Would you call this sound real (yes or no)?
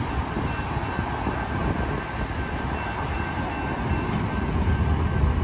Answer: yes